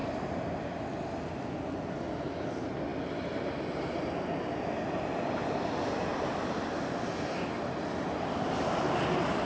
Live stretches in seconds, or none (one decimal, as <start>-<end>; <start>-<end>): 0.0-9.5